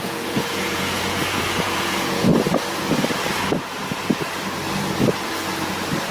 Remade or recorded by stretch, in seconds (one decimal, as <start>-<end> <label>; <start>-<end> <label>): 0.0-2.3 remade; 2.3-6.1 recorded